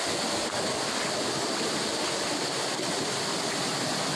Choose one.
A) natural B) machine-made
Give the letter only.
A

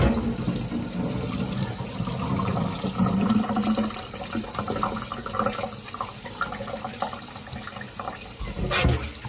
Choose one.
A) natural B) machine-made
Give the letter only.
A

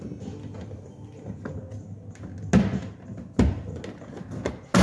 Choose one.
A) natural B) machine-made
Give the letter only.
A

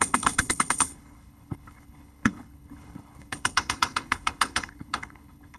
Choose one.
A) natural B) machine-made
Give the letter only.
B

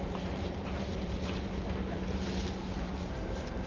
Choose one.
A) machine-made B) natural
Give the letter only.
A